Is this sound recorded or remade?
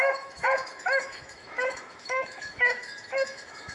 remade